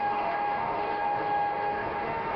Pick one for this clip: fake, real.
fake